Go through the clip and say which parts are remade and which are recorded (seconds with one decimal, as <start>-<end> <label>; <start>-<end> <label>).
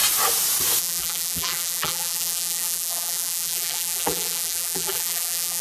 0.0-0.8 recorded; 0.8-5.6 remade